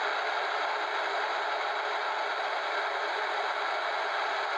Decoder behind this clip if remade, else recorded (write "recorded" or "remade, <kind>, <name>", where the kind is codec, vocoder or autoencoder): recorded